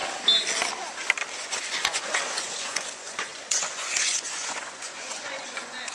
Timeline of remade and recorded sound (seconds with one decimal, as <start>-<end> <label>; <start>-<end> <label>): 0.0-1.4 recorded; 1.4-5.9 remade